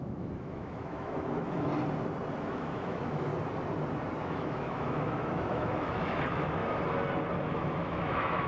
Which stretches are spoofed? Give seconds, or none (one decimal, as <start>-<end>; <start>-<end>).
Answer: 0.0-1.7; 2.4-3.3; 4.2-6.6; 7.4-8.5